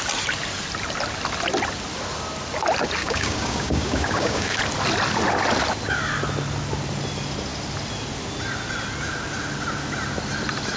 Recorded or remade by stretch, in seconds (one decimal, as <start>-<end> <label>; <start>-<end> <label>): 0.0-3.0 recorded; 3.0-4.6 remade; 4.6-10.8 recorded